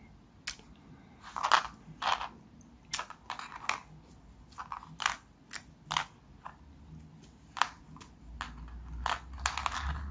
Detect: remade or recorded recorded